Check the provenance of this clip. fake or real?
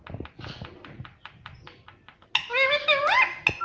real